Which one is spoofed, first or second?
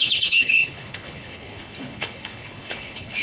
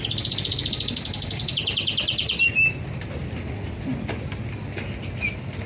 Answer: first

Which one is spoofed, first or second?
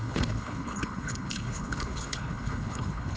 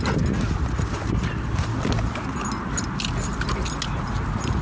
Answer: first